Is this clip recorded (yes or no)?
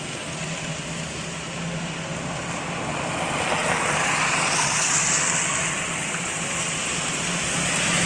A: yes